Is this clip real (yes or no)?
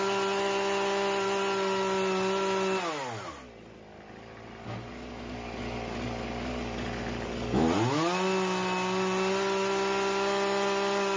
yes